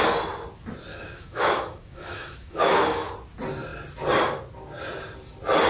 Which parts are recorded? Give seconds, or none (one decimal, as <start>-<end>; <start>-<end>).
0.0-0.9; 3.1-5.7